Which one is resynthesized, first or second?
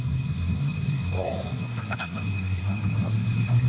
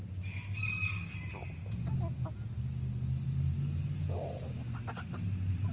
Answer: first